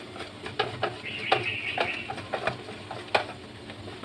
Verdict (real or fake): real